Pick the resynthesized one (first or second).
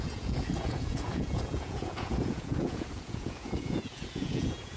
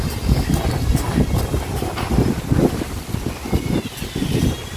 first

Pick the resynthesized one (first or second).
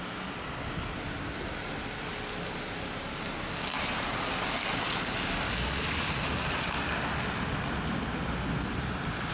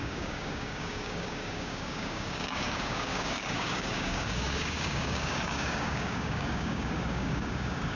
second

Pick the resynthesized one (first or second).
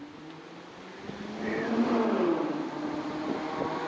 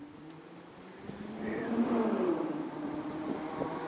second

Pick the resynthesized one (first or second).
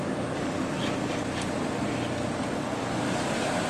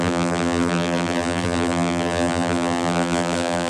second